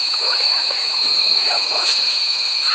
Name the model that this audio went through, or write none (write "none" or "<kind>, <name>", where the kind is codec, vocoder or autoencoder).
autoencoder, DAC-VAE